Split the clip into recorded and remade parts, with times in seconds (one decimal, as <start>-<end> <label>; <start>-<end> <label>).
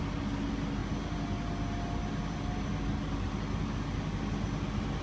0.0-5.0 recorded